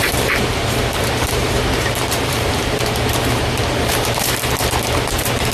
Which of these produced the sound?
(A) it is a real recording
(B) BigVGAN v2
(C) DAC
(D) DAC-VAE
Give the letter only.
B